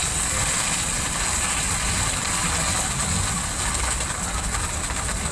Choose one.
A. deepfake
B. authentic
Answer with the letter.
B